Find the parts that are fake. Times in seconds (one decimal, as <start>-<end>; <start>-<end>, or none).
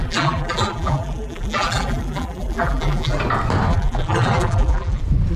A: 0.0-3.2; 3.7-5.0